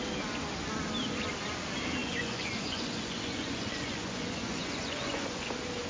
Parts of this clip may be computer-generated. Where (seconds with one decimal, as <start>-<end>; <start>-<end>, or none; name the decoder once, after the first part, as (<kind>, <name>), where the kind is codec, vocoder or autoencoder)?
2.0-5.5 (vocoder, Vocos)